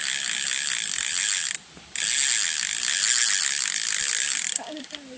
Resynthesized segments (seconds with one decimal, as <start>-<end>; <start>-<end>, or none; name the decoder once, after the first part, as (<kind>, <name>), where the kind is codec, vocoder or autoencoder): none

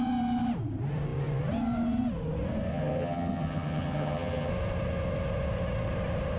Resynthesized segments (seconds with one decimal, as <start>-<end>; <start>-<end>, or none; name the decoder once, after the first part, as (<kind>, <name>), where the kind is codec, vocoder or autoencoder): 2.7-4.5 (vocoder, HiFi-GAN)

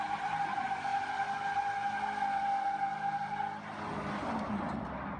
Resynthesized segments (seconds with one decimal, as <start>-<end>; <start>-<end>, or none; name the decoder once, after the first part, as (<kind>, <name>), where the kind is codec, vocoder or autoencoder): none

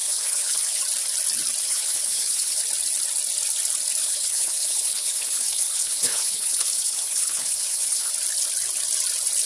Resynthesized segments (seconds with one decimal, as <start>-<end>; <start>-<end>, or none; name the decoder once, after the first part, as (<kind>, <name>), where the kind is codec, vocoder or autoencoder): 0.0-0.8 (codec, HILCodec); 1.6-2.6; 4.0-8.1